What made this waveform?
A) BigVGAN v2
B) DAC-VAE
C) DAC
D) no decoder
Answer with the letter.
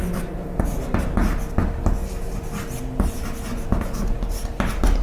D